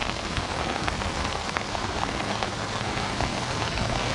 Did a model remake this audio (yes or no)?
yes